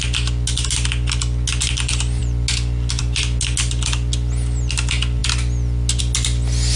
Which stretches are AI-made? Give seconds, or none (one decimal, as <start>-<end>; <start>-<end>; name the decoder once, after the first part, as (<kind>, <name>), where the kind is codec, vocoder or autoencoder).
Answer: none